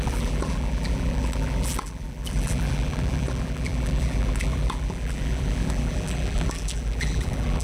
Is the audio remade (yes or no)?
yes